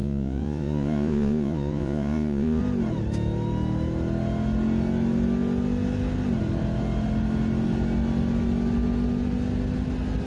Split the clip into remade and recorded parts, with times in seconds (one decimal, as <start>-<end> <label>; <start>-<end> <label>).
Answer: 0.0-2.6 remade; 2.6-10.3 recorded